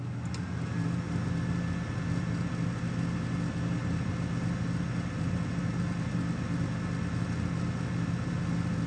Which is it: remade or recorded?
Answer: recorded